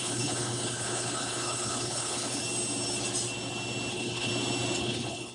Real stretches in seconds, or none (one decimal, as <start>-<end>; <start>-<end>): 2.4-3.9; 4.3-4.8